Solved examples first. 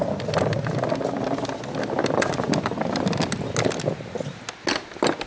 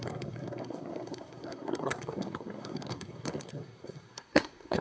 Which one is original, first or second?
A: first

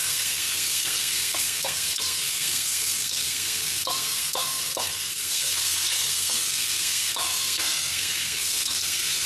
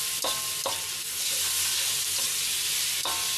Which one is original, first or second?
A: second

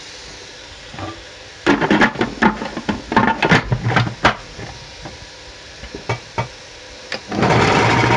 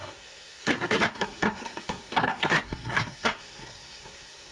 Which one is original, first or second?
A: first